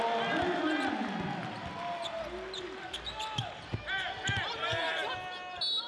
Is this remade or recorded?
recorded